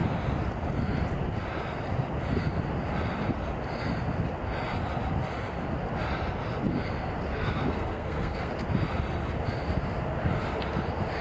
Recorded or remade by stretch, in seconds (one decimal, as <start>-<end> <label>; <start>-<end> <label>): 0.0-7.3 recorded; 7.3-8.5 remade; 8.5-11.2 recorded

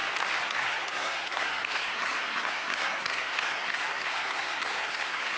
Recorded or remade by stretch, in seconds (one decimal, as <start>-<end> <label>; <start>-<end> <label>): 0.0-0.5 recorded; 0.5-5.4 remade

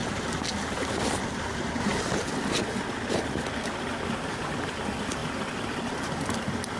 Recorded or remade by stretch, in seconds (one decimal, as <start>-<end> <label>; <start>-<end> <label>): 0.0-6.8 recorded

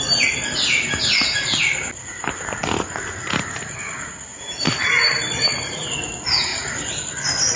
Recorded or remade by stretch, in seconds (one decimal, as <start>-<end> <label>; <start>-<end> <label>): 0.0-7.6 recorded

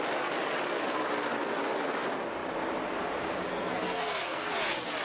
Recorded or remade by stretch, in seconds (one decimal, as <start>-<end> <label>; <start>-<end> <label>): 0.0-3.5 recorded; 3.5-4.5 remade; 4.5-5.0 recorded